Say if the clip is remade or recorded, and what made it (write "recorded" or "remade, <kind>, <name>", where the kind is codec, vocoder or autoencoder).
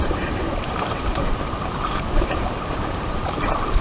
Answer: remade, vocoder, BigVGAN v2